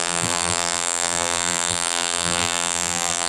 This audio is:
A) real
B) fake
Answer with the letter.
B